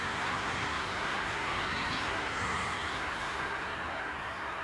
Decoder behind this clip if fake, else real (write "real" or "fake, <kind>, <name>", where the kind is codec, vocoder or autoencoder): fake, codec, SNAC